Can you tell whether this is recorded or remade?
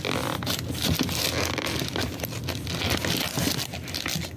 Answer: recorded